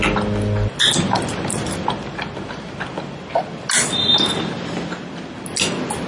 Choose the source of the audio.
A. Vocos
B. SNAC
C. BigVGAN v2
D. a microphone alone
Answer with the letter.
D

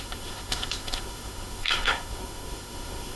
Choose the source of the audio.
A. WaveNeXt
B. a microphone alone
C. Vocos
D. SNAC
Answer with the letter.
D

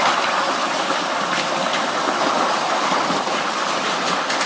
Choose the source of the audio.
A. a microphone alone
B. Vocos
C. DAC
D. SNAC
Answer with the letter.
A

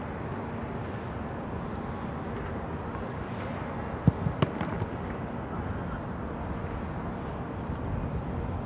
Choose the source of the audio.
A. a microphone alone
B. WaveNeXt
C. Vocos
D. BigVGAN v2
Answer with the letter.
A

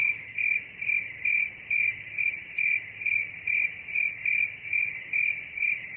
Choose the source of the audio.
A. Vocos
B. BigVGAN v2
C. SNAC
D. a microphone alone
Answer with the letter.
D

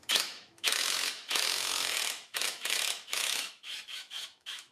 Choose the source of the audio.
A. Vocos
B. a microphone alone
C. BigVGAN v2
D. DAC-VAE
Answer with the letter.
D